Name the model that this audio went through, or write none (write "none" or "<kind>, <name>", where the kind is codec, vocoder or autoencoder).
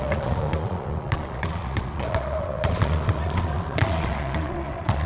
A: vocoder, Vocos